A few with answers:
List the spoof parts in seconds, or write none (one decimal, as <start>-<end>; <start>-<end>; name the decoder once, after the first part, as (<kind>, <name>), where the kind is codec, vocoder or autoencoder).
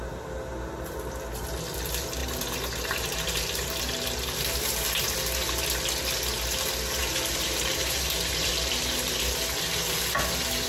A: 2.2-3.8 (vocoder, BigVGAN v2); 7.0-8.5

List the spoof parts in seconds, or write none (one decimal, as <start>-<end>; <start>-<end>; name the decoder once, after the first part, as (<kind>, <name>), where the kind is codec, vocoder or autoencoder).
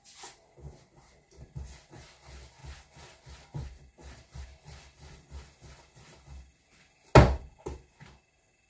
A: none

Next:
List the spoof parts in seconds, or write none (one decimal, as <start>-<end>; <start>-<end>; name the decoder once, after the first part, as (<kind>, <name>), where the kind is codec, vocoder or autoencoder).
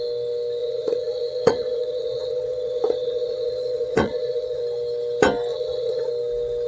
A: 0.6-4.6 (vocoder, Vocos); 5.5-6.1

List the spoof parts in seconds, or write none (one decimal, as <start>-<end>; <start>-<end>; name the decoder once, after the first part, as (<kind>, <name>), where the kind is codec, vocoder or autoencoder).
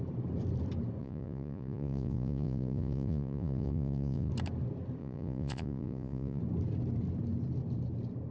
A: 1.0-4.3 (vocoder, Vocos); 5.0-6.4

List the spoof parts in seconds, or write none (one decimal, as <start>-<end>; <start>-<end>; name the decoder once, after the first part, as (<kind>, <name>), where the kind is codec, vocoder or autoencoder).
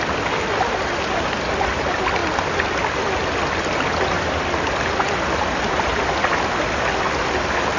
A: none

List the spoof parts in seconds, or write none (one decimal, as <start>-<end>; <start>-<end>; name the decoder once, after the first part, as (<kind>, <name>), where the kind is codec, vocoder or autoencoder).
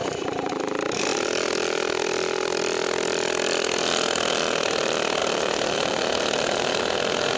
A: 5.2-6.8 (vocoder, BigVGAN v2)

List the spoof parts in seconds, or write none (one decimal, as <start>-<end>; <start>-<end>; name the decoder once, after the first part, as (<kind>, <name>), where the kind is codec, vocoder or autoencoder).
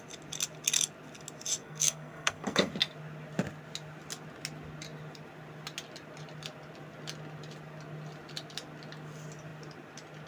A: 1.6-2.7 (codec, SNAC)